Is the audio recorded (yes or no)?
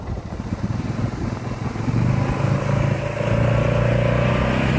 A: yes